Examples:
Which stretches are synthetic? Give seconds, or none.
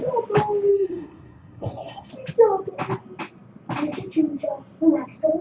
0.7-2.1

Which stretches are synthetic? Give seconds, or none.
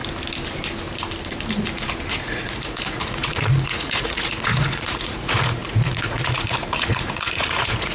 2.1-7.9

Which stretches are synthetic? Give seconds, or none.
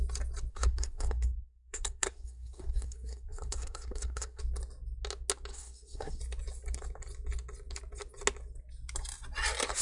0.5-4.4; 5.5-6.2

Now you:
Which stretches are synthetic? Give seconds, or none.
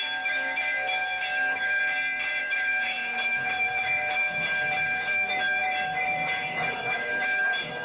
0.0-1.8; 2.4-7.8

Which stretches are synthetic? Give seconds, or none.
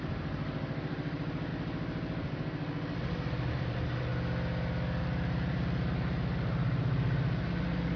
0.0-1.5; 3.5-4.1; 5.0-8.0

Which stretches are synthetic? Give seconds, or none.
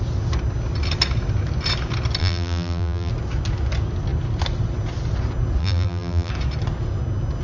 2.2-3.1; 5.6-6.3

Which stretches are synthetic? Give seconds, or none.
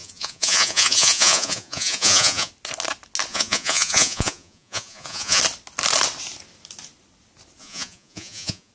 0.0-2.5; 3.3-5.4; 7.6-8.7